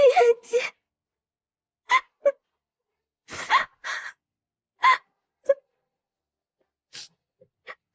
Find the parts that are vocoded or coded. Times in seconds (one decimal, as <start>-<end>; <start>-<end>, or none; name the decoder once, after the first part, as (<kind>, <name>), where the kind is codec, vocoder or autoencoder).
none